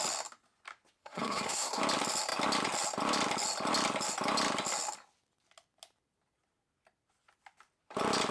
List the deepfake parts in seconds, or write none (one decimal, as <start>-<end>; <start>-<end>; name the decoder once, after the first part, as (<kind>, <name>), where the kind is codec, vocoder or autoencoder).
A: 1.0-1.8 (codec, SNAC)